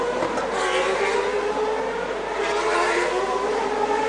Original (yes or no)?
yes